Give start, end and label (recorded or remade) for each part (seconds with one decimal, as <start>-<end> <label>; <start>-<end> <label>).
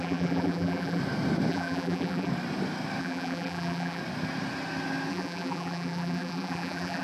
0.0-1.0 remade; 1.0-1.5 recorded; 1.5-2.3 remade; 2.3-3.0 recorded; 3.0-4.0 remade; 4.0-5.1 recorded; 5.1-7.0 remade